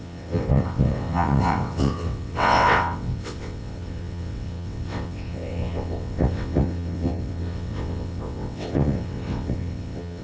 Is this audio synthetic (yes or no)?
yes